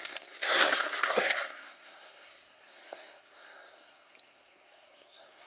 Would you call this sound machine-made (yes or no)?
yes